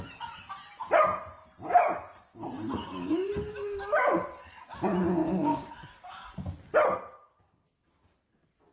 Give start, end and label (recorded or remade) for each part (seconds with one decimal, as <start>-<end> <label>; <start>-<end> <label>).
0.0-5.2 recorded; 5.2-5.7 remade; 5.7-8.7 recorded